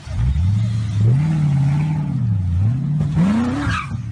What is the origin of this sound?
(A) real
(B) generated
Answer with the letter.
A